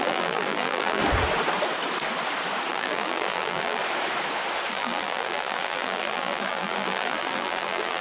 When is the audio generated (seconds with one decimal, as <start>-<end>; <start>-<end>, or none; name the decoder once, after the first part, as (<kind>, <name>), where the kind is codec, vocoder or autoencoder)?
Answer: 0.0-1.0 (vocoder, BigVGAN v2); 2.7-3.8; 4.7-8.0